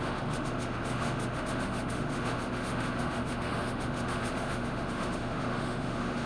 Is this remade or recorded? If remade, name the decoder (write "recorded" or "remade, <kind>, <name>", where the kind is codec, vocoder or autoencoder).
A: remade, autoencoder, DAC-VAE